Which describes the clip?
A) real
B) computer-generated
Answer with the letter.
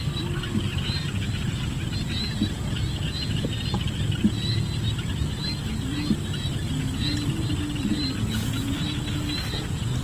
A